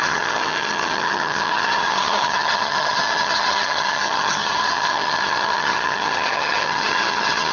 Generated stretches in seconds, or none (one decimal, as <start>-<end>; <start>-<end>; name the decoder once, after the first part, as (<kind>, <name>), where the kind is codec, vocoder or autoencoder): 0.0-7.5 (vocoder, HiFi-GAN)